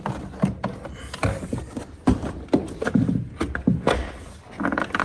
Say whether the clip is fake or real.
real